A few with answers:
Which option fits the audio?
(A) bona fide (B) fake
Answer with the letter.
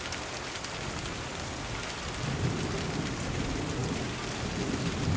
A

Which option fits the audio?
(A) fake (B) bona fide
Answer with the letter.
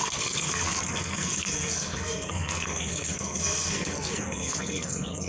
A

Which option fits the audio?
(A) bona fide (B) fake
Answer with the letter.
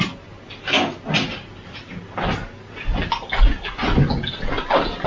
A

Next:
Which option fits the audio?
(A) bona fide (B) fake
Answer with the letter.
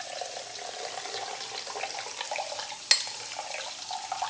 A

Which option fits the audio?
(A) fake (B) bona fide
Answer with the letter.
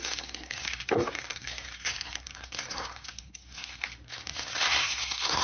A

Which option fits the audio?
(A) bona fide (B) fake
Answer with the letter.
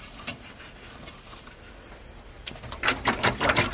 A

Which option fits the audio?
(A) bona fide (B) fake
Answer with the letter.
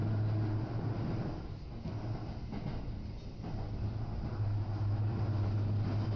A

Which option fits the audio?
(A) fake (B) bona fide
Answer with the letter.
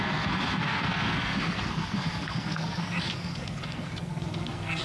A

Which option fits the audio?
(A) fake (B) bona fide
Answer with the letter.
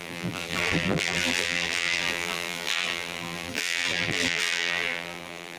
A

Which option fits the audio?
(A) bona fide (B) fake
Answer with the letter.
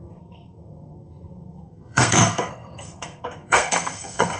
B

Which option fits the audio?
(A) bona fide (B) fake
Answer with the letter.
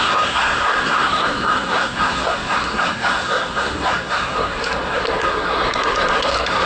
B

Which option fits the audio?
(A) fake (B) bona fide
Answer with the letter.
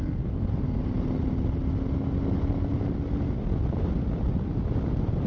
B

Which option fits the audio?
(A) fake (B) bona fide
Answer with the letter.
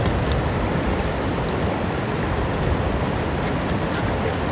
B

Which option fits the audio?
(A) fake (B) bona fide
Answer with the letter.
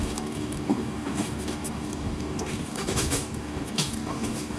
A